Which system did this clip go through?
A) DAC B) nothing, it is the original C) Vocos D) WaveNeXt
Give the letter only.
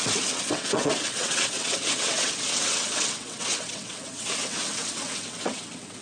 D